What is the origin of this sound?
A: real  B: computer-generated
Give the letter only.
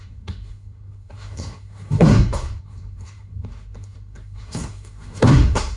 B